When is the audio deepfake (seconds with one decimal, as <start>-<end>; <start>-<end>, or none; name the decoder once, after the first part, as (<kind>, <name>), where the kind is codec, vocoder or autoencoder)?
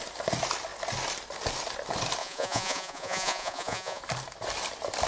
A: 2.2-4.0 (vocoder, Vocos)